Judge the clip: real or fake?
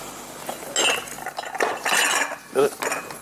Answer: real